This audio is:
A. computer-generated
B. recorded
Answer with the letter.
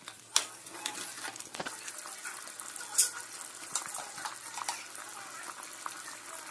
B